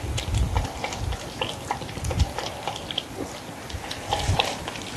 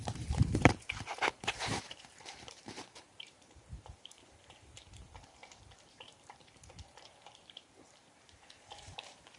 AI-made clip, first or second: second